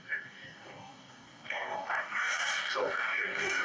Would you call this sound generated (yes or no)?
yes